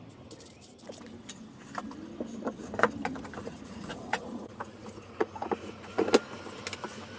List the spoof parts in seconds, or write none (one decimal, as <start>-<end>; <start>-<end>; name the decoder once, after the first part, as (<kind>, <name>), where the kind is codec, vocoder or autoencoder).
3.4-6.1 (vocoder, Vocos)